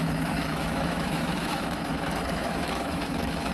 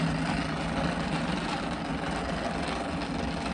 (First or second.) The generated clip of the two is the first